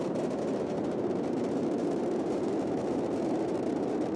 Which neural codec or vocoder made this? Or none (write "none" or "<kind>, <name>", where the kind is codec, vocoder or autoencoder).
vocoder, BigVGAN v2